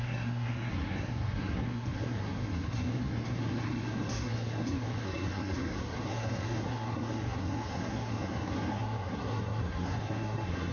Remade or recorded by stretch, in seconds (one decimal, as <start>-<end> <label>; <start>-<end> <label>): 0.0-10.7 remade